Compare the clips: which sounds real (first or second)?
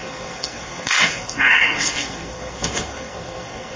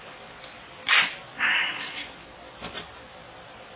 second